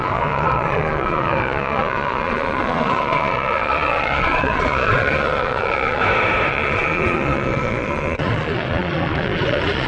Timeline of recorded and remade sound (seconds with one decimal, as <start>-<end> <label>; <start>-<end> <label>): 0.0-6.0 remade; 6.0-6.5 recorded; 6.5-9.9 remade